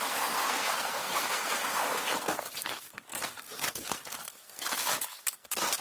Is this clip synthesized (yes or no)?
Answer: yes